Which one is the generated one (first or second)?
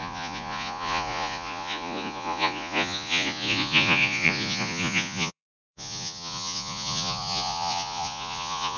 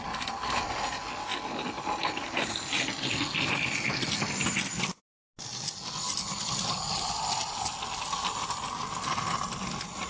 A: first